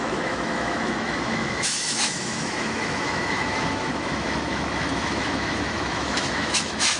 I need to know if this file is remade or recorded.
remade